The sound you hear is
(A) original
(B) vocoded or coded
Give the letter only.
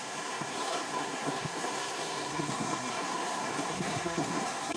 B